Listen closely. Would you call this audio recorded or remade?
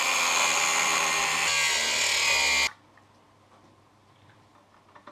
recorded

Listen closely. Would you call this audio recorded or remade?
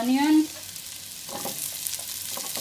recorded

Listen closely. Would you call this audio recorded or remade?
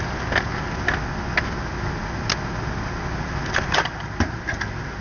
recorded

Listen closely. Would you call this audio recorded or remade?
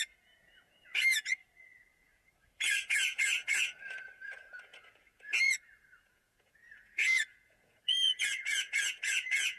remade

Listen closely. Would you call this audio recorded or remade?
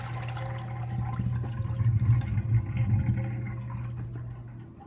recorded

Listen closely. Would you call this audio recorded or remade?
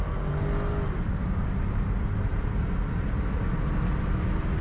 recorded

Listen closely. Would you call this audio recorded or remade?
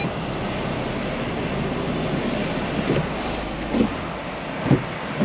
recorded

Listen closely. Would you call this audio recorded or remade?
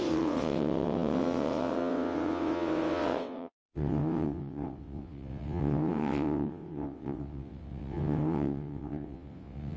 remade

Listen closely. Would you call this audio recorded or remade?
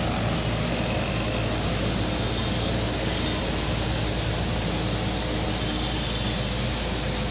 recorded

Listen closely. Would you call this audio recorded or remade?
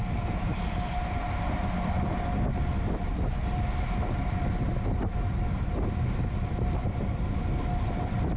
recorded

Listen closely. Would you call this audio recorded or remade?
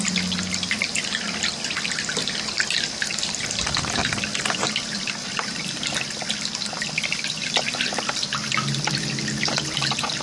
recorded